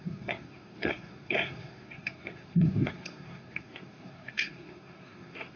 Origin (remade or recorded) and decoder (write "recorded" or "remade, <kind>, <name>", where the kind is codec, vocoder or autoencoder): remade, codec, SNAC